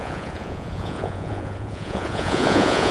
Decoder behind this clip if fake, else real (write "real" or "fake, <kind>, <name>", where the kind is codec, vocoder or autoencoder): fake, vocoder, Vocos